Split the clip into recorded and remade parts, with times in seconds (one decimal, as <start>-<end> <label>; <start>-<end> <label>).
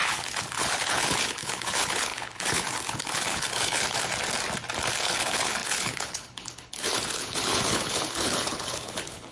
0.0-4.0 remade; 4.0-5.0 recorded; 5.0-9.3 remade